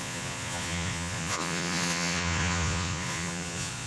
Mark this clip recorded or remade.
remade